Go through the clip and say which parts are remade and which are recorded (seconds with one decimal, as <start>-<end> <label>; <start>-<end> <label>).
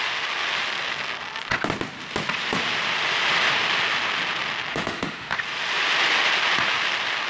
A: 0.0-4.7 recorded; 4.7-5.3 remade; 5.3-7.3 recorded